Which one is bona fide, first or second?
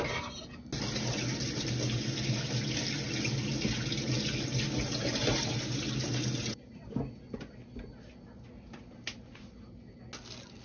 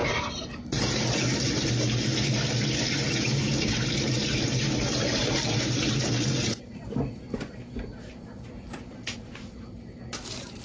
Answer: first